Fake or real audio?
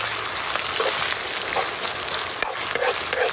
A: real